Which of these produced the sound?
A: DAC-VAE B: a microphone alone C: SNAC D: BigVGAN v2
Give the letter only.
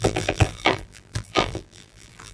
D